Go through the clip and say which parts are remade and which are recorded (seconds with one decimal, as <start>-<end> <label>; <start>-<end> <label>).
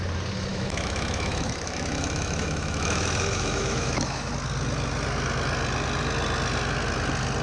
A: 0.0-0.5 recorded; 0.5-4.3 remade; 4.3-7.4 recorded